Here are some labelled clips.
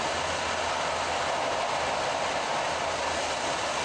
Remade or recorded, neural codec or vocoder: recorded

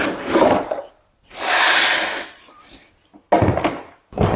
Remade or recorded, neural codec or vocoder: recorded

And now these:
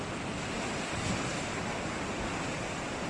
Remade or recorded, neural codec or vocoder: recorded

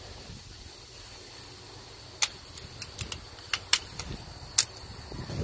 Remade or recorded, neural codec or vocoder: recorded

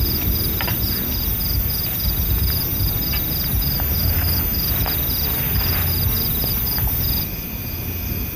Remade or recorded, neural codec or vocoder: recorded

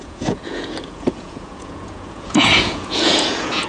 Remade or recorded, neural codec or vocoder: remade, vocoder, Vocos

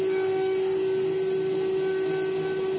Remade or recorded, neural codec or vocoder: recorded